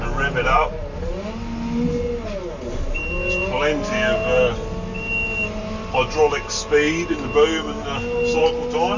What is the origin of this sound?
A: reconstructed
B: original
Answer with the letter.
B